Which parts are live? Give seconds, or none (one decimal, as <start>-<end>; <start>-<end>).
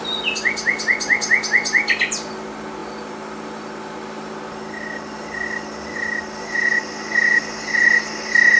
0.0-8.6